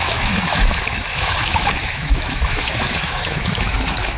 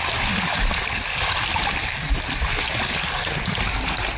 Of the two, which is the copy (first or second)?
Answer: first